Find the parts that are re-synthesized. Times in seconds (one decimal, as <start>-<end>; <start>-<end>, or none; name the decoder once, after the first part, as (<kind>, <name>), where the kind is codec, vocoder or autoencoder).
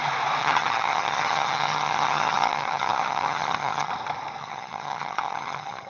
0.4-3.9 (vocoder, HiFi-GAN); 4.4-5.9